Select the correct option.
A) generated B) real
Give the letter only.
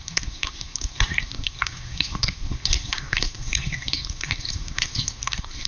A